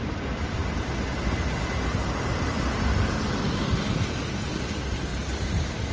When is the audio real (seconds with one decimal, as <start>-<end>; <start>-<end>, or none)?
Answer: 0.0-5.9